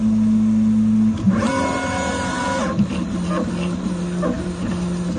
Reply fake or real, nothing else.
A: real